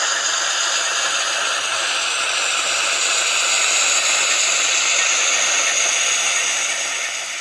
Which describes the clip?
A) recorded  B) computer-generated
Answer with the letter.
A